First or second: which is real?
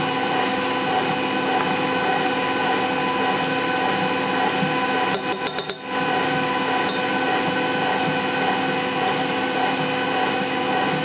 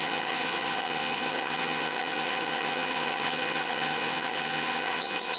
first